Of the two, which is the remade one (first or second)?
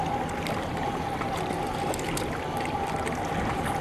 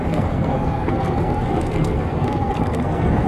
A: second